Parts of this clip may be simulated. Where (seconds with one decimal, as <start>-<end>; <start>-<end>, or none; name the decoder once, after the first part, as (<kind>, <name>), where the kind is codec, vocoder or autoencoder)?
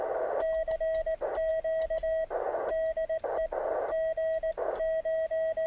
none